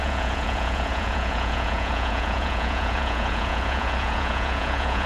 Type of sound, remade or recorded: remade